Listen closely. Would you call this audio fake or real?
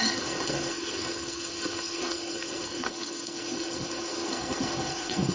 fake